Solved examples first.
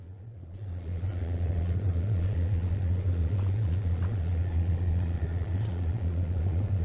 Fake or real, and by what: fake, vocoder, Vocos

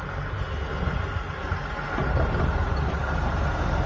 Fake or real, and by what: real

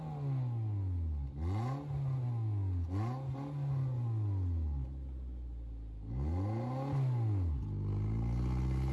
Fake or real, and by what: real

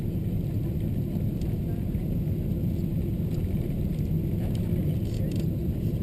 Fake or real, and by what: real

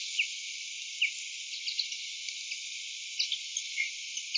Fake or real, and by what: real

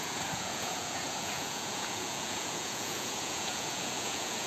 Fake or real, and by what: fake, vocoder, Vocos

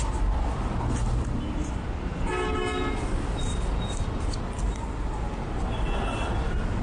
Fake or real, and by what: real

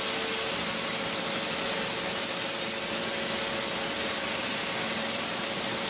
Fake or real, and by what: real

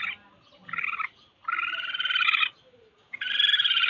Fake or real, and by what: real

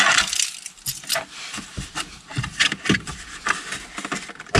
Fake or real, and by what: real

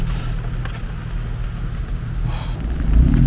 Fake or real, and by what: real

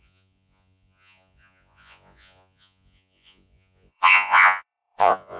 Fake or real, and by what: fake, vocoder, Vocos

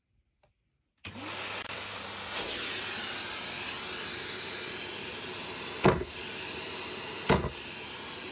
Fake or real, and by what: real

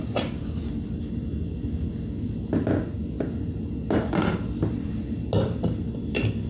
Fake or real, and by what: real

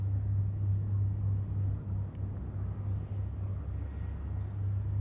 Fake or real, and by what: real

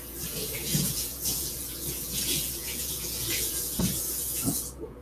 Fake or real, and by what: fake, vocoder, Vocos